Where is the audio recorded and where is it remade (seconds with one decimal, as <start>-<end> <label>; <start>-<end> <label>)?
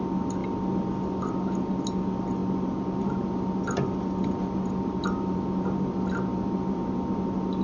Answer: 0.0-7.6 recorded